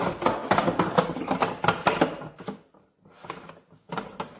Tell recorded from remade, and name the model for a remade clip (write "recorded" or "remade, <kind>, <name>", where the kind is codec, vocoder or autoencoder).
recorded